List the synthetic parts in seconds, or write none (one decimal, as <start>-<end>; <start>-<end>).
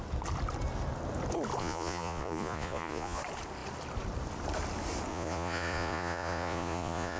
1.6-3.2; 5.1-7.2